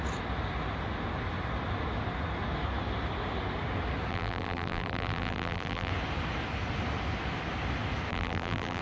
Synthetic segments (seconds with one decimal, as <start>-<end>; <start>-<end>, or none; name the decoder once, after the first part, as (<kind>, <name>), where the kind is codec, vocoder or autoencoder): 4.1-5.9 (vocoder, BigVGAN v2); 8.1-8.8